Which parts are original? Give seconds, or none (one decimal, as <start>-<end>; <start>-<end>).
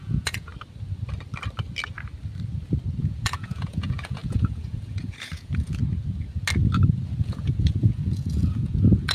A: 0.5-3.0; 5.8-7.2